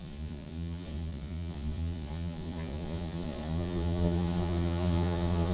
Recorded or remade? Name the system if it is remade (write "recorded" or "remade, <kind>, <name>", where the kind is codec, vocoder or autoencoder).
remade, vocoder, Vocos